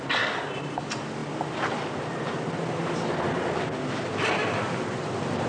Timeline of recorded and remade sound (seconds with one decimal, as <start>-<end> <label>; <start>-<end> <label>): 0.0-5.5 recorded